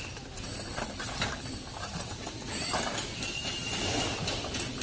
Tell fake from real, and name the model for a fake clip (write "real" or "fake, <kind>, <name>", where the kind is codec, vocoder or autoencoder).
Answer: real